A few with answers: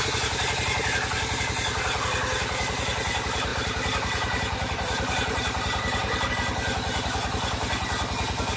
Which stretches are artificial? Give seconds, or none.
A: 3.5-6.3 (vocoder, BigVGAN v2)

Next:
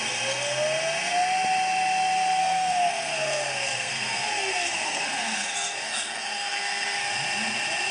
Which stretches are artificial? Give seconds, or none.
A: 2.4-7.1 (codec, SNAC)

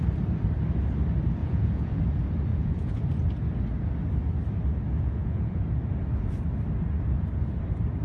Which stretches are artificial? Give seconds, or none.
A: 1.4-2.0 (vocoder, Vocos); 2.5-3.0; 4.9-5.6

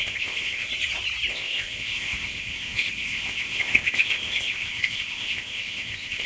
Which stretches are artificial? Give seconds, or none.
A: 0.0-0.7 (codec, ZipCodec); 1.3-6.3

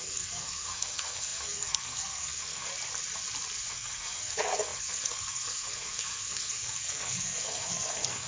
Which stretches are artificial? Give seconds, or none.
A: 0.0-2.7 (codec, SNAC); 3.7-8.3